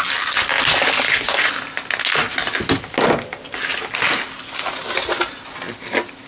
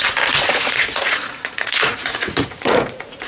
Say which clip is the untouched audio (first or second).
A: first